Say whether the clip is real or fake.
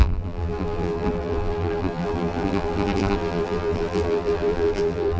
fake